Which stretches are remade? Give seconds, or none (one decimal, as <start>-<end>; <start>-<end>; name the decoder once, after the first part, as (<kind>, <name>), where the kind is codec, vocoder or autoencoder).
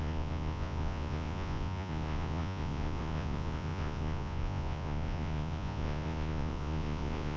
0.0-7.4 (vocoder, Vocos)